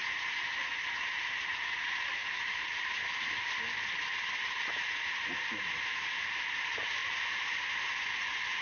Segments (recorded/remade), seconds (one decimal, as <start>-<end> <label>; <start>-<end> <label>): 0.0-2.2 recorded; 2.2-4.6 remade; 4.6-7.0 recorded; 7.0-7.7 remade; 7.7-8.6 recorded